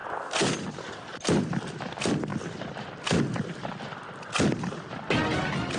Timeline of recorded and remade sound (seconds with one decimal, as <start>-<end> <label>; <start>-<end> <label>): 0.0-5.8 recorded